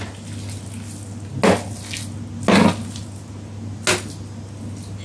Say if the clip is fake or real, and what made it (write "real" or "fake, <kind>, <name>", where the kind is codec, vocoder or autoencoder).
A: real